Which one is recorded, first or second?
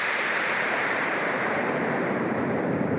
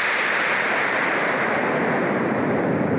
second